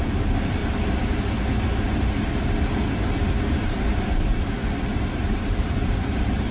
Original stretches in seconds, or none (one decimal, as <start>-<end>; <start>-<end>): 0.6-3.3; 4.6-5.2